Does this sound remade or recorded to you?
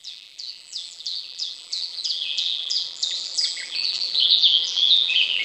remade